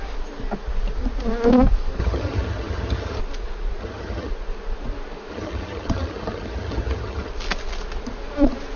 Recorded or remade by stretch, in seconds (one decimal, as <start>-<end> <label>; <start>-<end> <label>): 0.0-2.0 recorded; 2.0-3.2 remade; 3.2-3.8 recorded; 3.8-4.3 remade; 4.3-5.3 recorded; 5.3-7.3 remade; 7.3-8.8 recorded